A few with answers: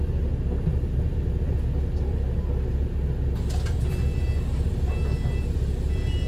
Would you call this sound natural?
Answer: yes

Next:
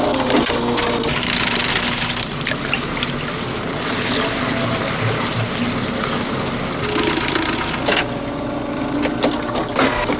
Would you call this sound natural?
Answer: yes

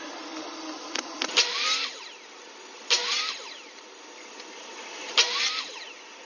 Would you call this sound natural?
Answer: yes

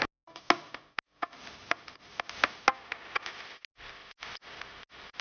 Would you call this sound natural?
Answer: yes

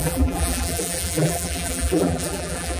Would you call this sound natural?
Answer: no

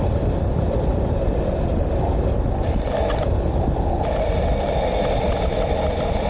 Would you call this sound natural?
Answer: yes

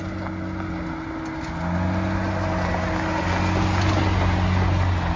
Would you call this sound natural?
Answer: yes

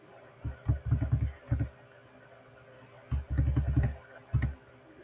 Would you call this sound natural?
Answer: yes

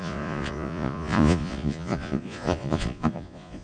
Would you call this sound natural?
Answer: no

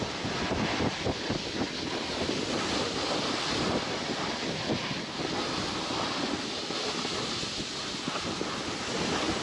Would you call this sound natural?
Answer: yes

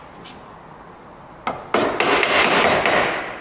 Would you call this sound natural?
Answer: yes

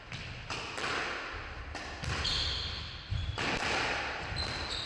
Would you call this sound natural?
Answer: yes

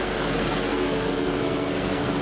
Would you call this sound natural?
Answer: no